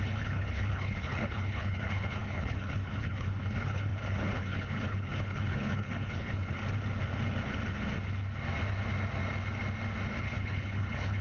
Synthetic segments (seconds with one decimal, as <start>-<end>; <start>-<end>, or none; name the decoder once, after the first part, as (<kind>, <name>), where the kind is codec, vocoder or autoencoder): 0.0-6.6 (codec, HILCodec); 10.2-11.2